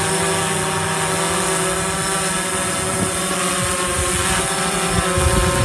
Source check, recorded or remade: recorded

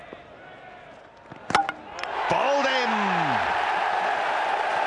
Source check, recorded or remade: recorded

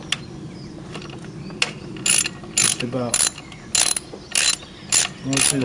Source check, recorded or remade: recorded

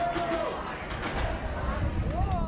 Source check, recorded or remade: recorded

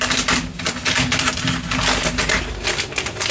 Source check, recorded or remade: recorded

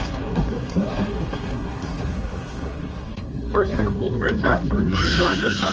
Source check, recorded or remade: remade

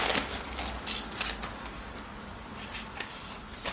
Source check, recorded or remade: recorded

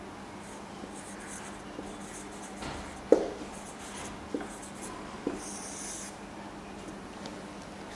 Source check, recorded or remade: recorded